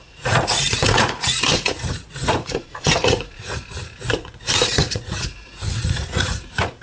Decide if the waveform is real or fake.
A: fake